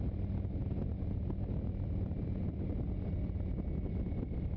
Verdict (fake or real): real